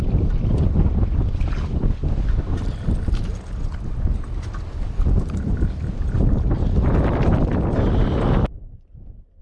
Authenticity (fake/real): real